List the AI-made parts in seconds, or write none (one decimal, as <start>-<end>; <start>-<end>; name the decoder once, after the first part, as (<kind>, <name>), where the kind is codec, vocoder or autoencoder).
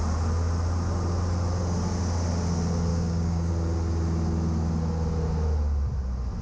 2.9-3.5 (codec, DAC)